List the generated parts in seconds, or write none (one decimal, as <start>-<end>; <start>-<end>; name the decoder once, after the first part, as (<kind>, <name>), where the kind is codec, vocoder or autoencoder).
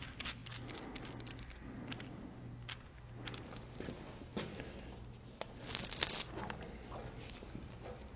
none